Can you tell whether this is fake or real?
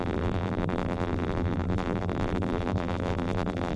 fake